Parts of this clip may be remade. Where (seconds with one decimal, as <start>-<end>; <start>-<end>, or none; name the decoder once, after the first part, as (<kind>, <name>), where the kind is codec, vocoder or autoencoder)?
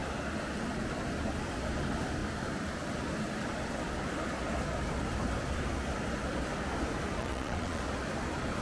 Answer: 7.2-7.8 (vocoder, Vocos)